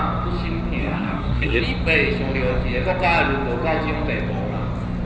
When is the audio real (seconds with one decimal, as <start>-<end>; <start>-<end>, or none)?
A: 0.0-0.8; 1.6-5.1